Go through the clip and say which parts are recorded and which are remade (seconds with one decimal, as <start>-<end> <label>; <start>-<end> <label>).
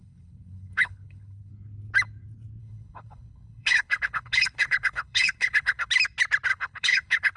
0.0-1.5 remade; 1.5-2.6 recorded; 2.6-5.9 remade; 5.9-6.5 recorded; 6.5-7.4 remade